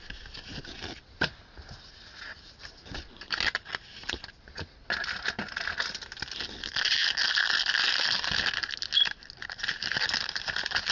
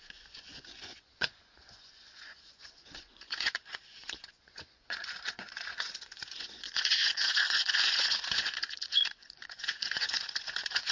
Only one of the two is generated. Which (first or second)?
second